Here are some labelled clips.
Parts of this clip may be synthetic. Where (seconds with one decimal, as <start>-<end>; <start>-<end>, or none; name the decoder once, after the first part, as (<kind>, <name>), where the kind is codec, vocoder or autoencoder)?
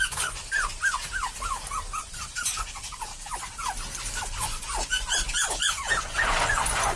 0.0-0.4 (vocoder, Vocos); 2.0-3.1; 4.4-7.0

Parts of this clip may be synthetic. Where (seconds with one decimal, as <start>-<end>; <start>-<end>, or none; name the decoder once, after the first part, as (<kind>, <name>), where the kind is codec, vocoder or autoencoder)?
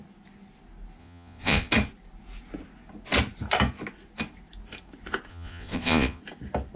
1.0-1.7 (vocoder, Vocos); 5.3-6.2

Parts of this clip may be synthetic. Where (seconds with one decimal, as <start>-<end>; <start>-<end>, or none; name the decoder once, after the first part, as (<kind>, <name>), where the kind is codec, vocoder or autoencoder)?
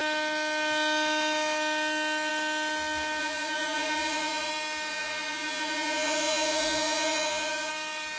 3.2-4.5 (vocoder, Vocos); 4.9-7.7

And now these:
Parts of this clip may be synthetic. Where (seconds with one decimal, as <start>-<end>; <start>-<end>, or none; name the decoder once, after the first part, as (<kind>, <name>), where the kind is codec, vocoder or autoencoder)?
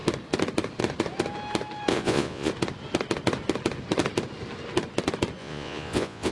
1.9-2.5 (vocoder, Vocos); 5.4-6.3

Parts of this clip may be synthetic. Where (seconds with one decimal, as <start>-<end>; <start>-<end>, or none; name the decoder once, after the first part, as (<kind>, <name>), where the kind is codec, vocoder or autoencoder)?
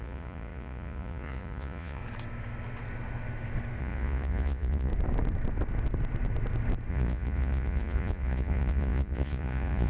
0.0-2.0 (vocoder, Vocos); 3.8-4.9; 6.9-9.9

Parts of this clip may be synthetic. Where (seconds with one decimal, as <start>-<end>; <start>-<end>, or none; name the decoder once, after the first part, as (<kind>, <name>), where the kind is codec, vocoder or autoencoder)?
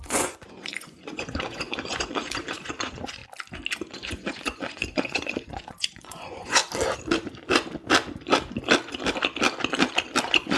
0.0-3.2 (vocoder, Vocos); 3.9-6.6; 10.2-10.6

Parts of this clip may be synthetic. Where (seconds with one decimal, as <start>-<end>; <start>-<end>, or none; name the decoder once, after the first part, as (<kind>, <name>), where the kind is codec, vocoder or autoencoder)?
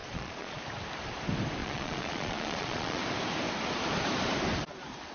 0.0-0.6 (vocoder, Vocos); 1.6-3.0